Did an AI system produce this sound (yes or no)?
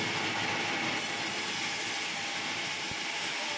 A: no